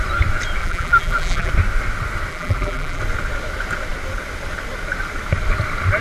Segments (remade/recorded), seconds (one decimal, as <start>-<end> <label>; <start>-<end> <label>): 0.0-0.6 recorded; 0.6-1.5 remade; 1.5-2.3 recorded; 2.3-3.0 remade; 3.0-6.0 recorded